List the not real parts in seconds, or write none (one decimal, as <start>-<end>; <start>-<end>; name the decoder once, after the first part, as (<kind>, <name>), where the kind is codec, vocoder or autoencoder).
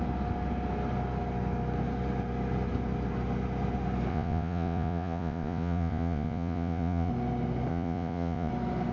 4.1-7.1 (vocoder, Vocos); 7.7-8.5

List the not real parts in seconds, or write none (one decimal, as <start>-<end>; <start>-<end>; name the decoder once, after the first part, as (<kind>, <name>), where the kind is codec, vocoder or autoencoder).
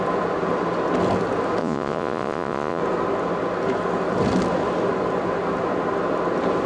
1.6-2.8 (vocoder, Vocos)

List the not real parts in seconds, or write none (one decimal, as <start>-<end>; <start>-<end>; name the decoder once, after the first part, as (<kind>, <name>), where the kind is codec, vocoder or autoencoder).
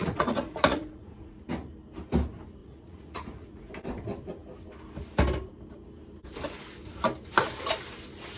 0.0-1.4 (vocoder, Vocos); 2.6-3.7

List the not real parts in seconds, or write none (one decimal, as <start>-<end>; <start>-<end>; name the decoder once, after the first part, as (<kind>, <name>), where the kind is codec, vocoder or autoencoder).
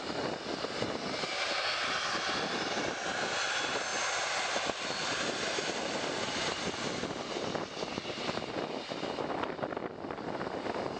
none